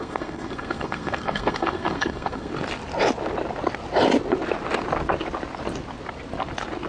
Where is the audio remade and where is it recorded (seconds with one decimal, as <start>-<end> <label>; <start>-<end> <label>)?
0.0-2.5 remade; 2.5-6.9 recorded